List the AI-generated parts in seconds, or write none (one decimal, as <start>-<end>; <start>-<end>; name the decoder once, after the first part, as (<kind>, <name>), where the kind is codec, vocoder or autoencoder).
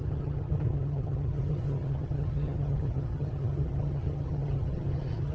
0.0-5.3 (vocoder, HiFi-GAN)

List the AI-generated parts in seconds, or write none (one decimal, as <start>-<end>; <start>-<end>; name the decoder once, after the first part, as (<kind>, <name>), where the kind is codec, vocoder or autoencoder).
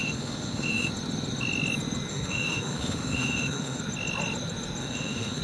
0.0-0.9 (autoencoder, DAC-VAE); 2.1-3.8; 4.8-5.4